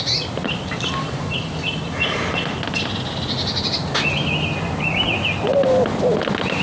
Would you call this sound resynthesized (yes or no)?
no